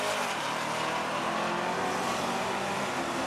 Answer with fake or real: real